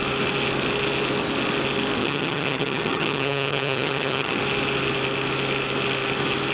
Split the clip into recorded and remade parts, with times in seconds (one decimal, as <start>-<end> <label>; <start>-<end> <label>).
0.0-2.0 recorded; 2.0-4.4 remade; 4.4-6.5 recorded